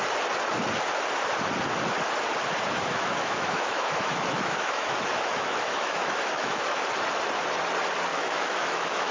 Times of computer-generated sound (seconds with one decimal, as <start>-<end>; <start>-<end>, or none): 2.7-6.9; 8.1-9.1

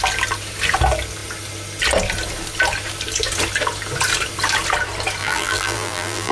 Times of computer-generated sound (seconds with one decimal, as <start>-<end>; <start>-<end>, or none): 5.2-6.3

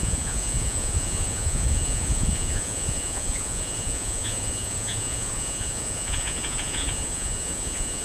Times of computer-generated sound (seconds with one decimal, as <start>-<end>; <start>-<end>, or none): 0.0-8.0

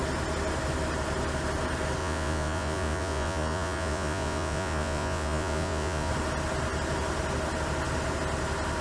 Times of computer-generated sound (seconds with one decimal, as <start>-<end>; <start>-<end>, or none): 2.0-6.1

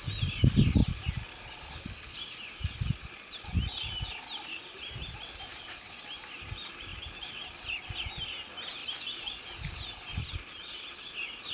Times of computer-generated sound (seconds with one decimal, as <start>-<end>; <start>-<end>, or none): none